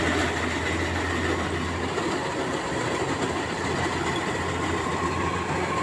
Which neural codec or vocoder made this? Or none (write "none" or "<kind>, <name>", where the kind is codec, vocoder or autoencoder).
none